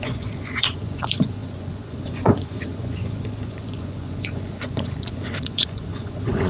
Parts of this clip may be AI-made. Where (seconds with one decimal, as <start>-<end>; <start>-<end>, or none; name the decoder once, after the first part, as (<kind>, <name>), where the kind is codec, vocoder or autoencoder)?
0.0-6.5 (vocoder, Vocos)